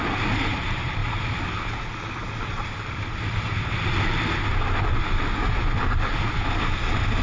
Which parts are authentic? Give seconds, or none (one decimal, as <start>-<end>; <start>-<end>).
0.0-7.2